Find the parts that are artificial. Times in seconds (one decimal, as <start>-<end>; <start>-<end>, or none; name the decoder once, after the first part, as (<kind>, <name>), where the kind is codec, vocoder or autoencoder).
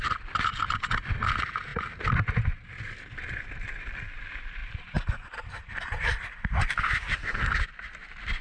none